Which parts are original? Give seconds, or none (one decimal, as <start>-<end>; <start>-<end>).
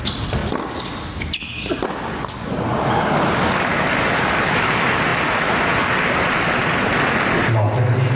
0.0-8.2